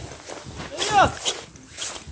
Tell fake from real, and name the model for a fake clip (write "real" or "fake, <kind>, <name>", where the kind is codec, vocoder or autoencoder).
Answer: real